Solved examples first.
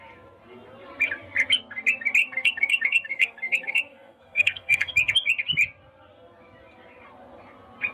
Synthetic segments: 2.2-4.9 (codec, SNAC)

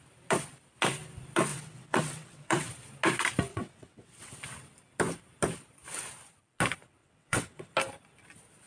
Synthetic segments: 1.5-2.7 (vocoder, WaveNeXt); 3.5-4.4; 7.0-7.7

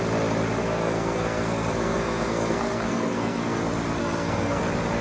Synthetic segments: 0.6-3.6 (codec, SNAC); 4.0-4.6

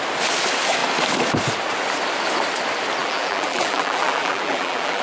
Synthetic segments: 3.0-5.0 (vocoder, BigVGAN v2)